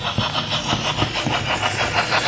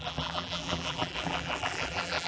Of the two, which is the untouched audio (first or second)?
first